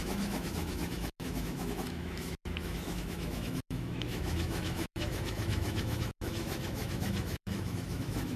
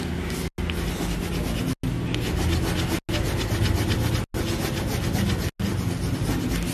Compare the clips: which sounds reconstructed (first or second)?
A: first